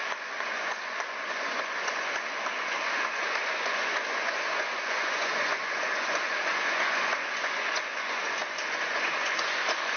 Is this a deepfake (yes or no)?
yes